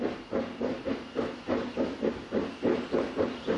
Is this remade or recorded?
recorded